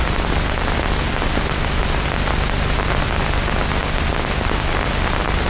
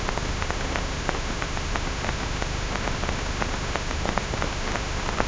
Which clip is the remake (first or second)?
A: second